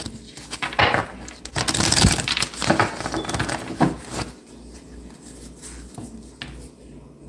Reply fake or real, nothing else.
real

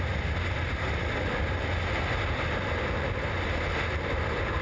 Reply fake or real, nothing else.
real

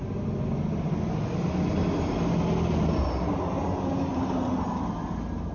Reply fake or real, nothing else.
real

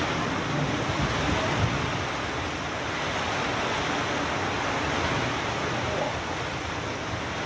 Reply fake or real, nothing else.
real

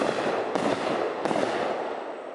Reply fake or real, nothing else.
real